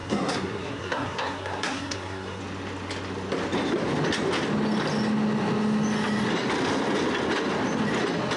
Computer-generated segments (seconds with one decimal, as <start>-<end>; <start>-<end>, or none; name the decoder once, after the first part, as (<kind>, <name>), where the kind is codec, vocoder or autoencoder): 0.0-2.4 (codec, SNAC)